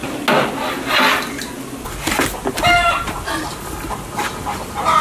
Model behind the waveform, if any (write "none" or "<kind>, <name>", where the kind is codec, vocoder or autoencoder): none